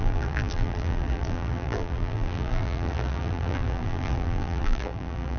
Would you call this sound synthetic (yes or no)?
yes